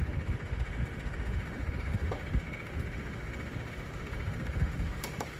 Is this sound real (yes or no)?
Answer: no